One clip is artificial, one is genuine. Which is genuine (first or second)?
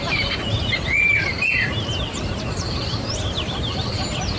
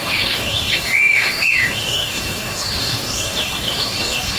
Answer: first